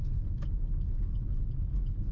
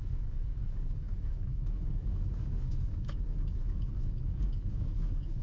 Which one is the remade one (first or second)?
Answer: second